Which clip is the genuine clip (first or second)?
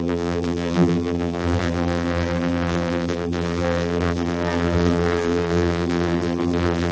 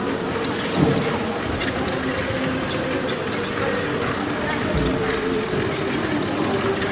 second